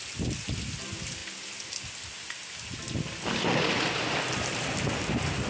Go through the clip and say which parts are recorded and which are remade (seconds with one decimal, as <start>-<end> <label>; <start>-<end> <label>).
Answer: 0.0-5.5 recorded